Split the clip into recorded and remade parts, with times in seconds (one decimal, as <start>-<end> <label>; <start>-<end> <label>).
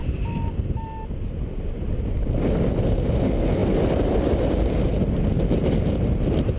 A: 0.0-6.6 recorded